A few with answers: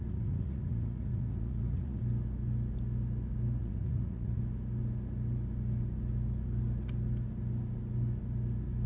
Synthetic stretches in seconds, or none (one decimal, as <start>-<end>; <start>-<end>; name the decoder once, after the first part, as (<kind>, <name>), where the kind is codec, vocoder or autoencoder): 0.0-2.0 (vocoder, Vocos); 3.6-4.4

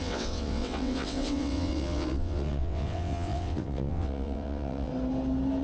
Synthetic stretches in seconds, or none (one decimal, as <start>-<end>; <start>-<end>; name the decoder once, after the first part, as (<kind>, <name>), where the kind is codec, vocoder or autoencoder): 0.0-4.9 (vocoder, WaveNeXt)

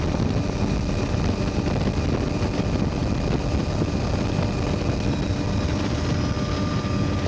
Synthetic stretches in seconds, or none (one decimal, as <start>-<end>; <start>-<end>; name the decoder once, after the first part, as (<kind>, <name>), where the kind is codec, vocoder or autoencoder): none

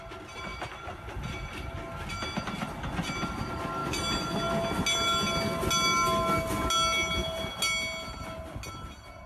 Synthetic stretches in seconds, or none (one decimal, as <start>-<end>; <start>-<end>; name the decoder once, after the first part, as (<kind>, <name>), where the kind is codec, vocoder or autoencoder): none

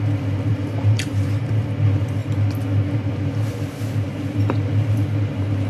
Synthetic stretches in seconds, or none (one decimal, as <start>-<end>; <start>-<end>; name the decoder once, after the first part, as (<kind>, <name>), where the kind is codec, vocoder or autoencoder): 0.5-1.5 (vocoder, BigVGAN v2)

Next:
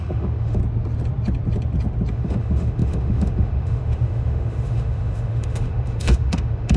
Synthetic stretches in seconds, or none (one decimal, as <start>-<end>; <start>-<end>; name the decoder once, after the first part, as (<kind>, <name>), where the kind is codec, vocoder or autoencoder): 0.0-0.6 (autoencoder, DAC-VAE); 2.1-6.8

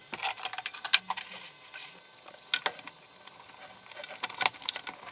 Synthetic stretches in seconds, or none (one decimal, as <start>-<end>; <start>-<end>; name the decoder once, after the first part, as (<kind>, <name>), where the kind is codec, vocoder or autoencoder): none

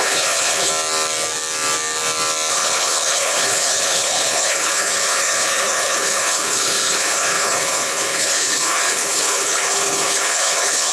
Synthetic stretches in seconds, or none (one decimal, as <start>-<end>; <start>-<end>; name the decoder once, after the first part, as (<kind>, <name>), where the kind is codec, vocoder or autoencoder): 0.0-0.7 (codec, HILCodec); 2.5-10.9